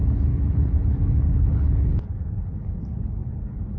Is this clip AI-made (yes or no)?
yes